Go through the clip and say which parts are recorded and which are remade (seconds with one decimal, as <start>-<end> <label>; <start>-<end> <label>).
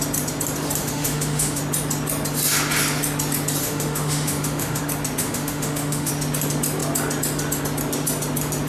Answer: 0.0-0.8 recorded; 0.8-1.6 remade; 1.6-3.6 recorded; 3.6-4.8 remade; 4.8-5.2 recorded; 5.2-6.1 remade; 6.1-8.7 recorded